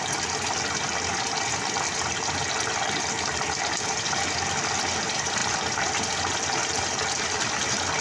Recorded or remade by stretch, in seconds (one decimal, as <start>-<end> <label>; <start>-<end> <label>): 0.0-8.0 recorded